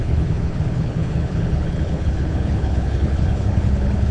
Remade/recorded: remade